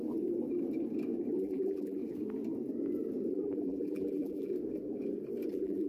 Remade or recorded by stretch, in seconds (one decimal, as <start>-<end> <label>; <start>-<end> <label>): 0.0-1.4 recorded; 1.4-2.0 remade; 2.0-3.3 recorded; 3.3-4.5 remade; 4.5-5.5 recorded; 5.5-5.9 remade